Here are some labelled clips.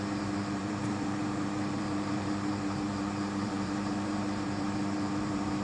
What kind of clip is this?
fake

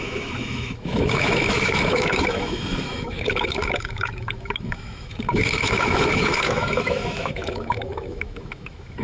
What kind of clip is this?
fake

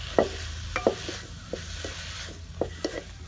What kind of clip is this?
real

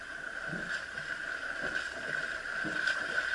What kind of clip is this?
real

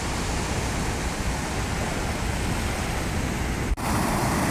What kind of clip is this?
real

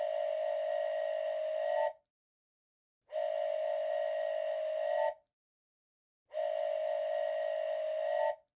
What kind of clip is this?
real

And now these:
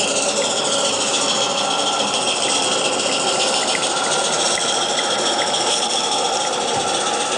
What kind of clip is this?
real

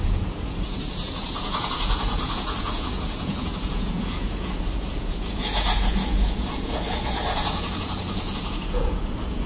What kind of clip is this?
fake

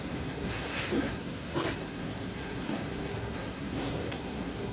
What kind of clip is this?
fake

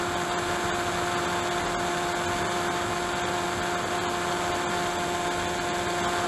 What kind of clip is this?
real